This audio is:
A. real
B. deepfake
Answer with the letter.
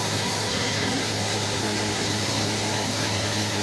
B